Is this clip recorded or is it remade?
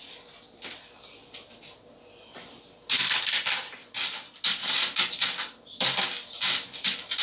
recorded